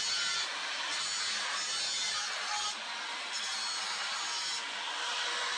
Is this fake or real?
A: real